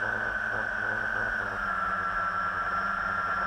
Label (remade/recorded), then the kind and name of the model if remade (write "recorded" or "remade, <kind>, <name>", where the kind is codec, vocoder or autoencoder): recorded